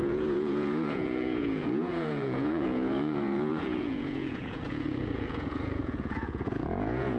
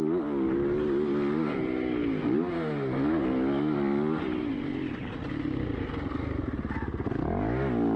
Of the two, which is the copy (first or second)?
first